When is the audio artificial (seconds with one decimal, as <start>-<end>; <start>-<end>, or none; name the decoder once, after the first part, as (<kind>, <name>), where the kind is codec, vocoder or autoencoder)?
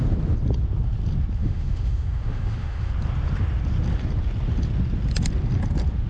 1.4-2.9 (autoencoder, DAC-VAE)